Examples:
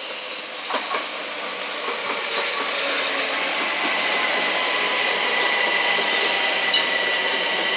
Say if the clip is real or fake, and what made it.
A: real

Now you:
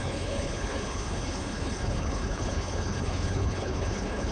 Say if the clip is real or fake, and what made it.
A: fake, codec, HILCodec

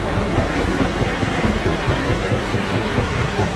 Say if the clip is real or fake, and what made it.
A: fake, codec, SNAC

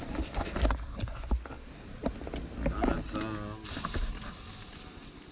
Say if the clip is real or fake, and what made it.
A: real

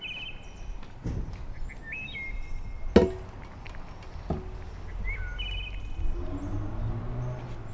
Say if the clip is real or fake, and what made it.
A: real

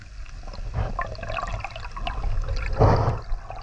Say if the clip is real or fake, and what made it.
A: real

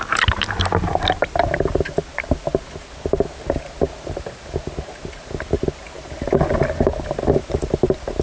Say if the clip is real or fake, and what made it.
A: real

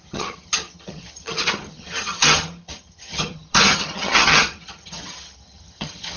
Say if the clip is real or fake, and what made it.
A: fake, vocoder, HiFi-GAN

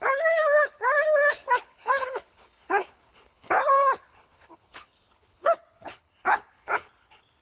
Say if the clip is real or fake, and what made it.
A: fake, codec, HILCodec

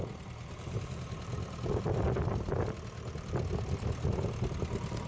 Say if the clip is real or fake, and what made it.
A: real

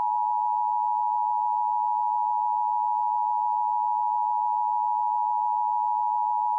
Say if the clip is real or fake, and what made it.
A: fake, autoencoder, DAC-VAE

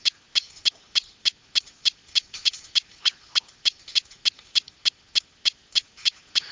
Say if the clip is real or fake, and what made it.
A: real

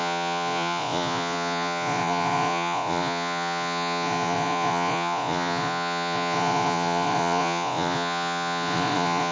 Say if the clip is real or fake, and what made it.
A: fake, vocoder, Vocos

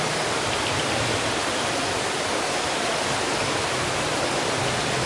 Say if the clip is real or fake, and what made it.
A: real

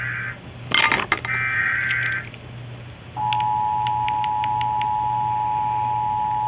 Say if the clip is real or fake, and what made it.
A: real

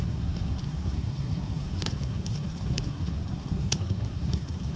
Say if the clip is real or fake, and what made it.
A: fake, codec, SNAC